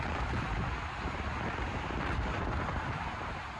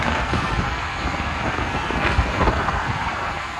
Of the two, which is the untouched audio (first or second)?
first